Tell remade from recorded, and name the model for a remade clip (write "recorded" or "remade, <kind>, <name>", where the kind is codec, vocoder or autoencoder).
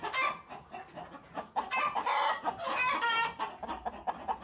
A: recorded